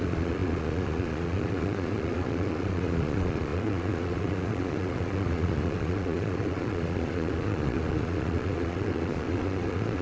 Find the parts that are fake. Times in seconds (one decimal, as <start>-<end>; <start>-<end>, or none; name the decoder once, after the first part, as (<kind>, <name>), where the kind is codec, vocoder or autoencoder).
0.0-10.0 (vocoder, Vocos)